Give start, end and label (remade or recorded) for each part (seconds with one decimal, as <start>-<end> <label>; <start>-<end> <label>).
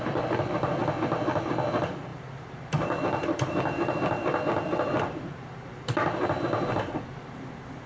0.0-2.1 recorded; 2.1-5.7 remade; 5.7-7.9 recorded